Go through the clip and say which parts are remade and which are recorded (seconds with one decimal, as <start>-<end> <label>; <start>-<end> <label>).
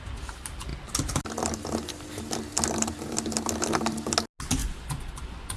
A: 0.0-4.6 recorded; 4.6-5.6 remade